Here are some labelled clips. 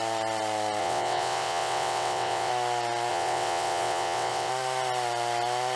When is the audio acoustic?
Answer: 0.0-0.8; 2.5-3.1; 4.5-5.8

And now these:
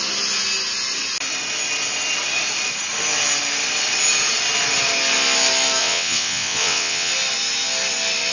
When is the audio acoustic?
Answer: 0.0-5.8; 7.1-8.3

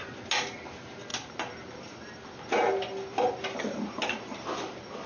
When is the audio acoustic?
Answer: 0.0-5.1